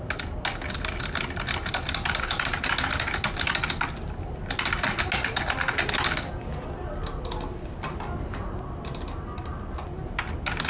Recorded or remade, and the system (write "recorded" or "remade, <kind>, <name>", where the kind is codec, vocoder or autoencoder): recorded